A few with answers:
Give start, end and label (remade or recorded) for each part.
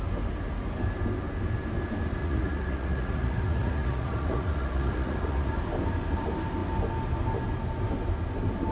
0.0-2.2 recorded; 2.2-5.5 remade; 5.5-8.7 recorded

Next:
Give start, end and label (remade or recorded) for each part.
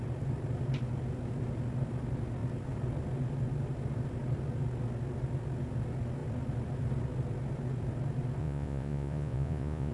0.0-8.4 recorded; 8.4-9.9 remade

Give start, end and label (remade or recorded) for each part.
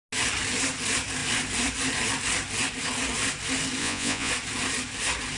0.0-3.8 recorded; 3.8-4.3 remade; 4.3-5.4 recorded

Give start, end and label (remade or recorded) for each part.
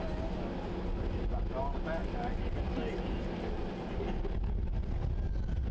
0.0-5.7 recorded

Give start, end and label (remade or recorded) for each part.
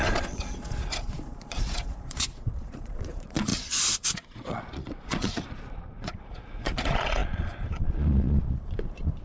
0.0-9.2 remade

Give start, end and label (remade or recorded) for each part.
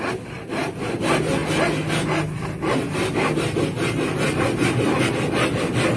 0.0-6.0 recorded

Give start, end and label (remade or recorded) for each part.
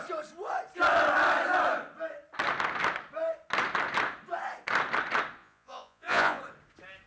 0.0-5.4 recorded; 5.4-6.4 remade; 6.4-7.1 recorded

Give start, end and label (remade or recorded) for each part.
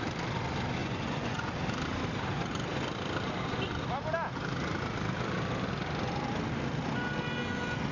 0.0-0.8 recorded; 0.8-1.5 remade; 1.5-7.9 recorded